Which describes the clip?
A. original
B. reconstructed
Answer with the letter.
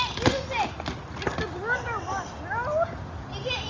A